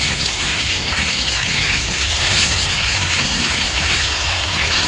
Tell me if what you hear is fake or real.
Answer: fake